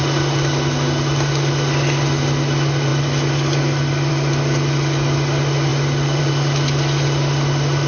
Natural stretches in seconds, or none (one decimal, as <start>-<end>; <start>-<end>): 0.0-7.9

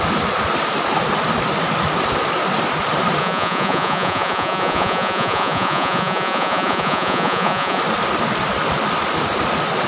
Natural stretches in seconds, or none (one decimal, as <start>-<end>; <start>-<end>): 0.0-3.2; 7.8-9.9